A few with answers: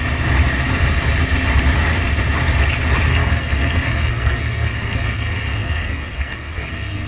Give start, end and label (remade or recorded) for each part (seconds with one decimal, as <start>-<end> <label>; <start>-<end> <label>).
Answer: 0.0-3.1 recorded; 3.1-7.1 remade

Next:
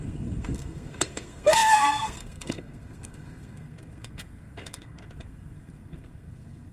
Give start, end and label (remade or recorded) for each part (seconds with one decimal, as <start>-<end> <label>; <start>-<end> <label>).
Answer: 0.0-6.7 remade

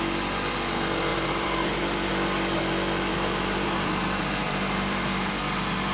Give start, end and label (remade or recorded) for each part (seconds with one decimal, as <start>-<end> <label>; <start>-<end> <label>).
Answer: 0.0-1.1 recorded; 1.1-2.1 remade; 2.1-3.1 recorded; 3.1-5.4 remade; 5.4-5.9 recorded

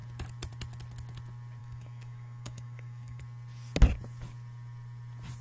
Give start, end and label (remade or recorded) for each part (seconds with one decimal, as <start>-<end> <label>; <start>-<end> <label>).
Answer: 0.0-1.6 recorded; 1.6-3.2 remade; 3.2-5.4 recorded